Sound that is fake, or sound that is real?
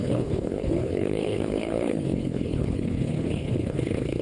fake